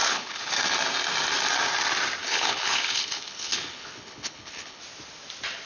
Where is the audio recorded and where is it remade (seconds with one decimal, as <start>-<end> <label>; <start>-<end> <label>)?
0.0-0.5 remade; 0.5-2.2 recorded; 2.2-4.8 remade; 4.8-5.7 recorded